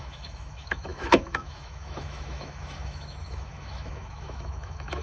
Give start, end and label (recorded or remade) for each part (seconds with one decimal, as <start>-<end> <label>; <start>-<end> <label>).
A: 0.0-5.0 remade